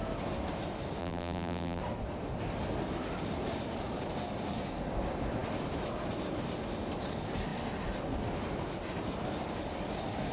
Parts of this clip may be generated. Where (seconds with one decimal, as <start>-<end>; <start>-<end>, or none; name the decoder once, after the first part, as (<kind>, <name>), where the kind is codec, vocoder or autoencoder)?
1.0-1.8 (vocoder, BigVGAN v2)